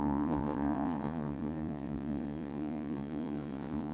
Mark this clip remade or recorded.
remade